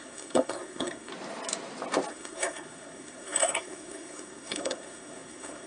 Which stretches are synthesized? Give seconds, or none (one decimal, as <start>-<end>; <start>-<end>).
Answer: 0.0-1.1; 2.1-5.7